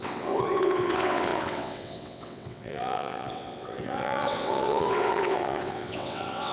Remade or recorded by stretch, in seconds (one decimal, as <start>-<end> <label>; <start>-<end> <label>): 0.0-6.5 remade